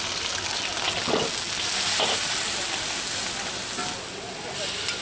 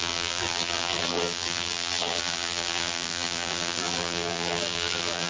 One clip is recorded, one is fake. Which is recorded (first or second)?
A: first